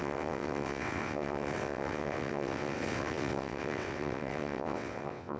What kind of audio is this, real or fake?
fake